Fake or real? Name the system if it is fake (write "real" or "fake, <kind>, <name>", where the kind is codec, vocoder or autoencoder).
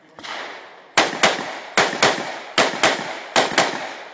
real